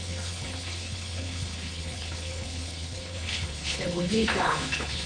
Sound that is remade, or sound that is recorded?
remade